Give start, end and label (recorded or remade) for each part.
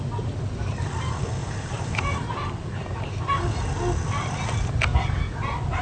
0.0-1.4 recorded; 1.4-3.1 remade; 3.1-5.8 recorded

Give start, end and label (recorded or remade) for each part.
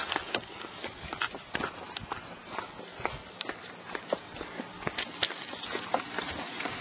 0.0-6.8 recorded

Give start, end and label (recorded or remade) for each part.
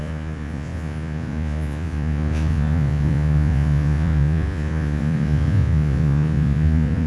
0.0-7.1 remade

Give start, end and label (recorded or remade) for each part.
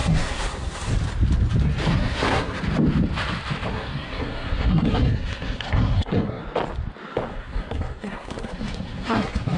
0.0-0.9 remade; 0.9-1.9 recorded; 1.9-2.6 remade; 2.6-3.7 recorded; 3.7-6.4 remade; 6.4-7.3 recorded; 7.3-9.6 remade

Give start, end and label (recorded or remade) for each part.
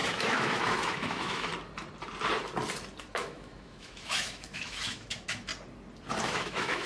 0.0-1.5 remade; 1.5-3.0 recorded; 3.0-5.5 remade; 5.5-6.2 recorded; 6.2-6.9 remade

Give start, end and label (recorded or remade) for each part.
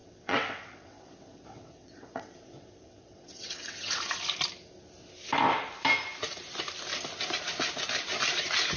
0.0-4.0 remade; 4.0-8.8 recorded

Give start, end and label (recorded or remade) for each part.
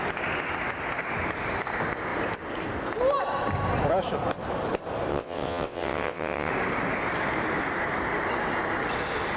0.0-5.1 recorded; 5.1-6.5 remade; 6.5-9.4 recorded